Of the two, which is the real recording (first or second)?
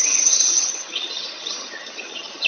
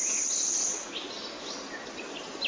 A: second